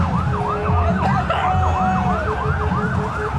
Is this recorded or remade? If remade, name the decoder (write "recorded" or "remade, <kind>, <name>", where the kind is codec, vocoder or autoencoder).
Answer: recorded